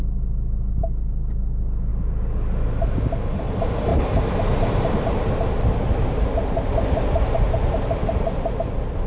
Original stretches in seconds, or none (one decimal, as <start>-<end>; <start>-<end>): 0.0-3.9; 5.3-9.1